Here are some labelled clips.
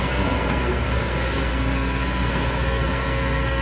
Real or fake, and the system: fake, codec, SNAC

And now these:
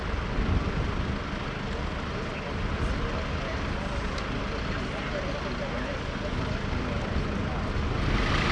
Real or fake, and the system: real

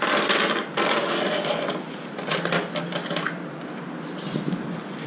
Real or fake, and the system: real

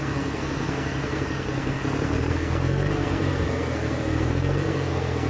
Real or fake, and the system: fake, codec, SNAC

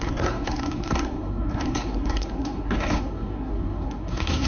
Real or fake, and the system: fake, codec, SNAC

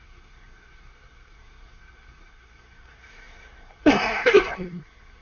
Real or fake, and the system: fake, codec, SNAC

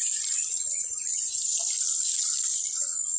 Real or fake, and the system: real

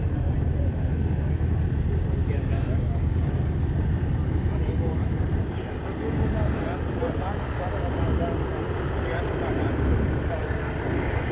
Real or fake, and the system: real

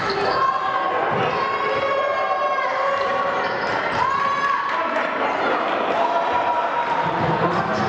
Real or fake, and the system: real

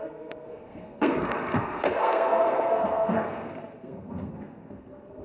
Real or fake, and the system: fake, codec, SNAC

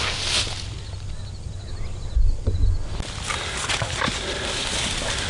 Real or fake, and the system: real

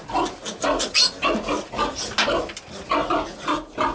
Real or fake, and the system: real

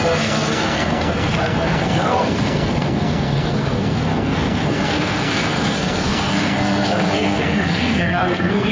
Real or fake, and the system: fake, codec, SNAC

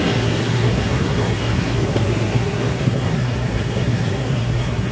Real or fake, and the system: fake, codec, SNAC